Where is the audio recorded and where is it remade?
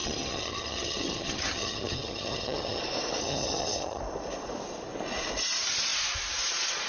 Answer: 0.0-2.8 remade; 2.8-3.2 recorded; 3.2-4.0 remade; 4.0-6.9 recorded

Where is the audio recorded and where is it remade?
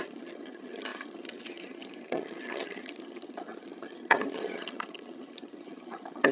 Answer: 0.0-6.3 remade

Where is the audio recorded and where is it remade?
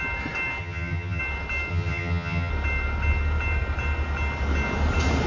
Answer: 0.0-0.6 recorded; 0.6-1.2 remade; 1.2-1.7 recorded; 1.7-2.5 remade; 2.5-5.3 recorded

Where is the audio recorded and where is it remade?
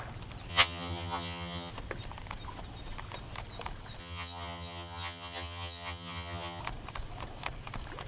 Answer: 0.0-0.5 recorded; 0.5-1.7 remade; 1.7-4.0 recorded; 4.0-6.6 remade; 6.6-8.1 recorded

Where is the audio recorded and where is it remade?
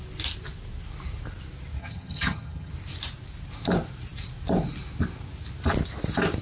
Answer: 0.0-1.8 recorded; 1.8-2.7 remade; 2.7-6.4 recorded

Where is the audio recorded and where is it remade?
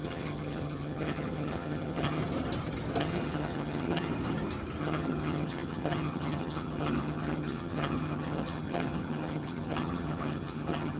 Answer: 0.0-2.2 remade; 2.2-3.0 recorded; 3.0-4.1 remade; 4.1-4.8 recorded; 4.8-11.0 remade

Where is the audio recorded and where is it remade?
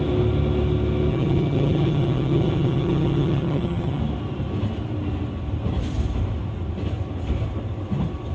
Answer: 0.0-1.1 recorded; 1.1-4.0 remade; 4.0-8.3 recorded